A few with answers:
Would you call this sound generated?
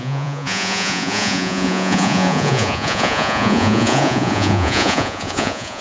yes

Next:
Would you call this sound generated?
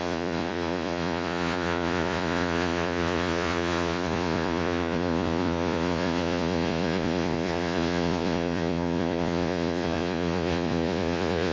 yes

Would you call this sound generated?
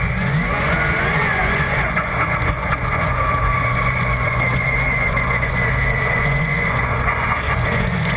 yes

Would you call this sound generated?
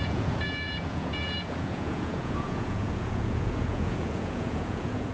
yes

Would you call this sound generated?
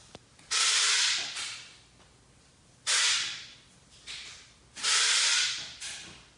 no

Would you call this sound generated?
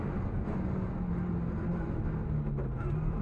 no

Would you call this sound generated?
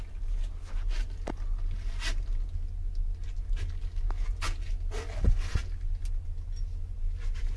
no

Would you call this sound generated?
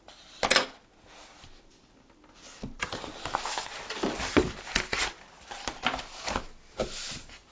no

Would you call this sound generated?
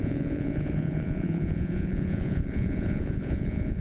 yes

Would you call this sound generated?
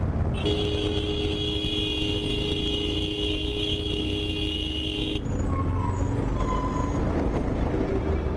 no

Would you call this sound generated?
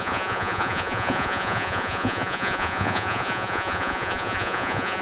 yes